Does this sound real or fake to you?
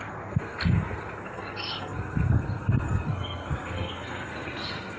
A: fake